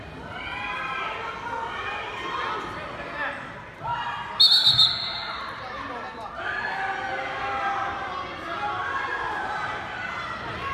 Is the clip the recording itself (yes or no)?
yes